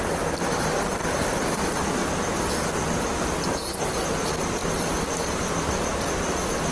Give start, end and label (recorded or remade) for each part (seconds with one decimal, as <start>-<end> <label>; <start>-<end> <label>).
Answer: 0.0-6.7 recorded